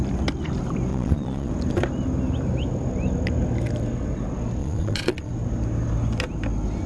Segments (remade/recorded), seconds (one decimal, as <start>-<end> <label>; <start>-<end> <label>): 0.0-0.9 recorded; 0.9-1.5 remade; 1.5-4.6 recorded; 4.6-5.3 remade; 5.3-6.9 recorded